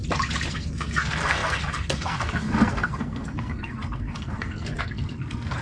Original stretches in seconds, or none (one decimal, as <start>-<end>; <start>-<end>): 0.0-0.5